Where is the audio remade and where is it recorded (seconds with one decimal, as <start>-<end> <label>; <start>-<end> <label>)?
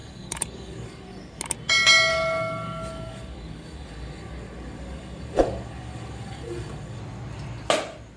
0.0-1.4 remade; 1.4-2.1 recorded; 2.1-7.0 remade; 7.0-8.2 recorded